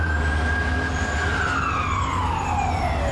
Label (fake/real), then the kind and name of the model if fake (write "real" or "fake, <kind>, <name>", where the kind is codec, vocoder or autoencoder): real